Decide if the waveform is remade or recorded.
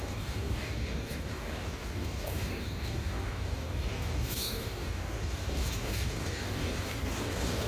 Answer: remade